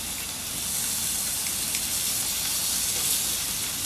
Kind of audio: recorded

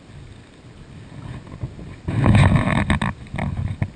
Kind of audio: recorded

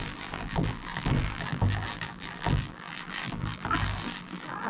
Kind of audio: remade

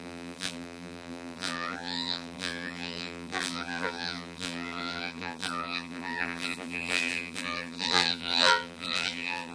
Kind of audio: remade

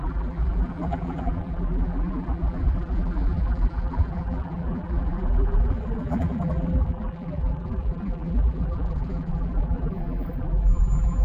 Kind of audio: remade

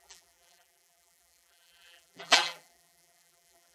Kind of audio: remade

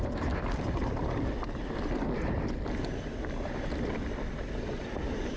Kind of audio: remade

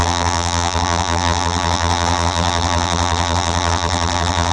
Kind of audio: remade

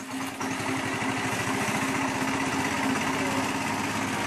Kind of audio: recorded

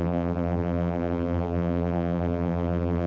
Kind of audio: remade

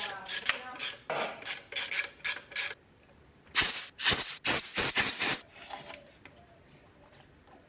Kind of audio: recorded